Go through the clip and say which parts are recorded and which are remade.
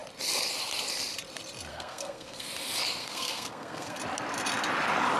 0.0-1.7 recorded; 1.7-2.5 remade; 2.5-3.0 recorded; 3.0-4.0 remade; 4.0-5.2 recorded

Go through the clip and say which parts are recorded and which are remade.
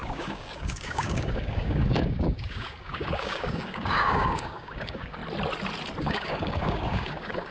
0.0-5.2 remade; 5.2-6.0 recorded; 6.0-7.5 remade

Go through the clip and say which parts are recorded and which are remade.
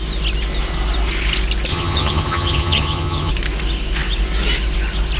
0.0-1.7 recorded; 1.7-3.3 remade; 3.3-5.2 recorded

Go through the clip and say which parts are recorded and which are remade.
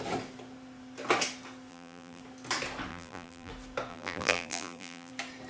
0.0-1.7 recorded; 1.7-2.2 remade; 2.2-2.9 recorded; 2.9-3.5 remade; 3.5-3.9 recorded; 3.9-5.1 remade; 5.1-5.5 recorded